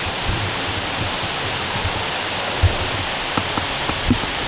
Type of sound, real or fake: real